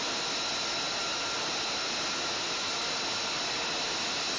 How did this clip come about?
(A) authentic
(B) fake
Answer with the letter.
A